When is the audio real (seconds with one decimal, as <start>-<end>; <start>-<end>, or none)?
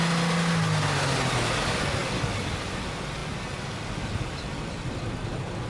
0.0-2.0; 2.8-3.2; 5.0-5.7